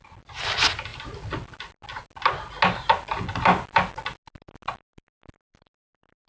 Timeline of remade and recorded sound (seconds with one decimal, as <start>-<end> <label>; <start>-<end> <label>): 0.0-6.3 recorded

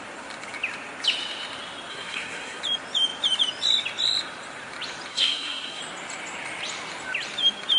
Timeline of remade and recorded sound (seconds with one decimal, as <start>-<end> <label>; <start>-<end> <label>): 0.0-1.9 recorded; 1.9-2.6 remade; 2.6-5.1 recorded; 5.1-5.8 remade; 5.8-7.8 recorded

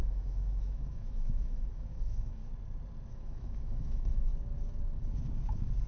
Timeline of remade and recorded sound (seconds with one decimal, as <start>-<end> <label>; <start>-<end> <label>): 0.0-2.4 remade; 2.4-3.1 recorded; 3.1-4.3 remade; 4.3-5.9 recorded

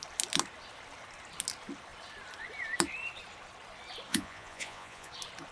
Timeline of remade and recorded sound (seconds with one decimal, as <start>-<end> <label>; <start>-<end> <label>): 0.0-4.1 recorded; 4.1-5.1 remade; 5.1-5.5 recorded

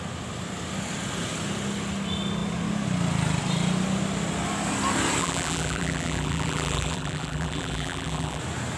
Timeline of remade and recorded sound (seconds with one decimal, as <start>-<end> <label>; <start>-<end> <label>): 0.0-5.2 recorded; 5.2-8.4 remade; 8.4-8.8 recorded

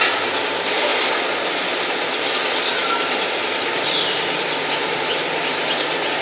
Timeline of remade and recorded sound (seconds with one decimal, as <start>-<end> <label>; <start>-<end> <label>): 0.0-6.2 recorded

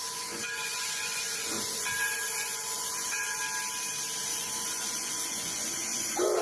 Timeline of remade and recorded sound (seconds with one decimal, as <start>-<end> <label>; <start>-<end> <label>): 0.0-3.4 remade; 3.4-4.3 recorded; 4.3-6.4 remade

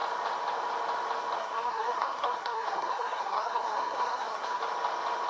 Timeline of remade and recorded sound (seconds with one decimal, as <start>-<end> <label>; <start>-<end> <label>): 0.0-1.4 recorded; 1.4-4.6 remade; 4.6-5.3 recorded